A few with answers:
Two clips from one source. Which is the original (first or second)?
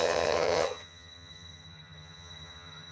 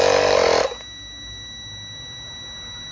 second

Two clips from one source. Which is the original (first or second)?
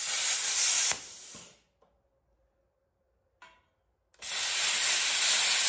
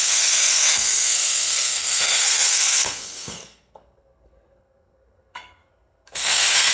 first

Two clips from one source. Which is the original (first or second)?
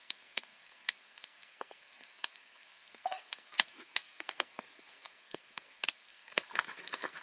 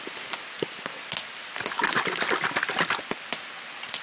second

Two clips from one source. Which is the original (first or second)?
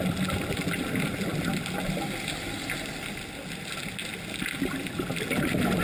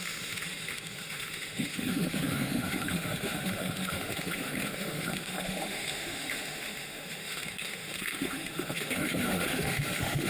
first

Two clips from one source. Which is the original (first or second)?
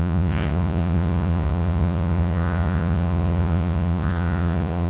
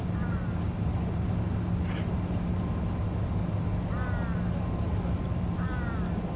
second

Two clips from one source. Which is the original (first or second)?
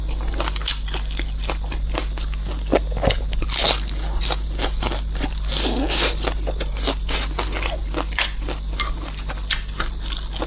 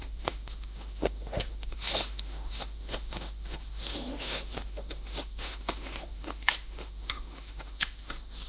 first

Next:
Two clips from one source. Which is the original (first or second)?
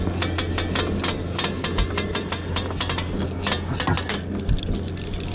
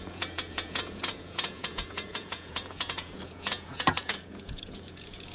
first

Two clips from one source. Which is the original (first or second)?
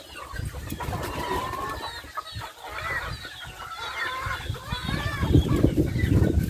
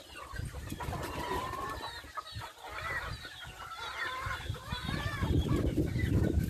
first